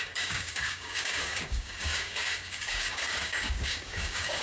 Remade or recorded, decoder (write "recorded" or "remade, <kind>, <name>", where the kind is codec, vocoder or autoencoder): remade, codec, DAC